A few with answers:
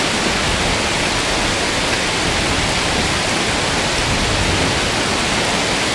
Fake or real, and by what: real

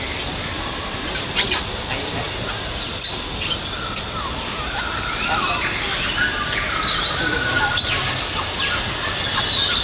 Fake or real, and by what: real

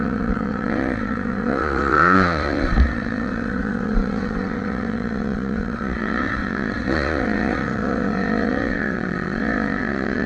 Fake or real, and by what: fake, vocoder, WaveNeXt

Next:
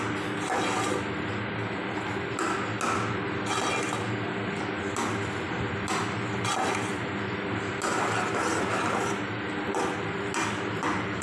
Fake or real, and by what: real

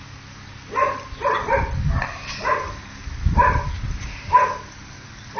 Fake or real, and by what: real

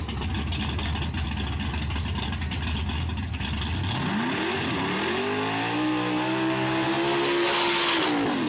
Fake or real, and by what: real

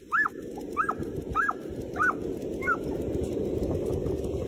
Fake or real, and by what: real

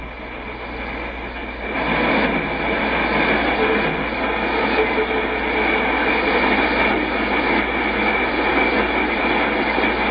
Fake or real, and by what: real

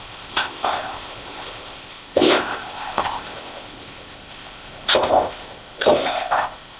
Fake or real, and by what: fake, codec, ZipCodec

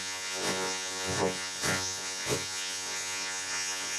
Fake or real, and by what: fake, vocoder, Vocos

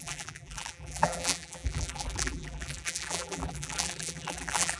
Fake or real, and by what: fake, vocoder, BigVGAN v2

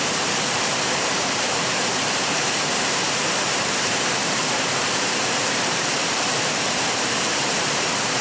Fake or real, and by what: fake, vocoder, BigVGAN v2